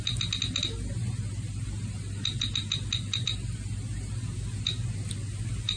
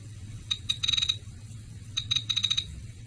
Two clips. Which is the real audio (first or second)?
first